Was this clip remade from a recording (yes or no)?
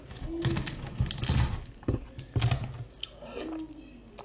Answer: no